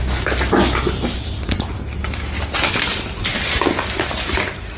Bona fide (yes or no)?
yes